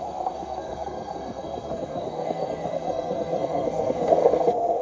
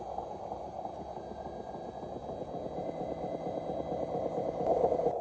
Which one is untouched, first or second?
second